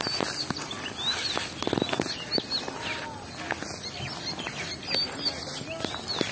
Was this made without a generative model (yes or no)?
yes